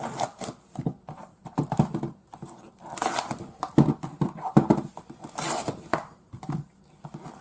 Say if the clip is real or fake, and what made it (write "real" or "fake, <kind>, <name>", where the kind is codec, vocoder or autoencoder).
real